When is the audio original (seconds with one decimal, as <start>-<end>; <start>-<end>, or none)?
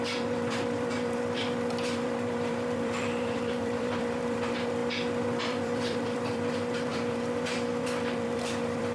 4.8-5.4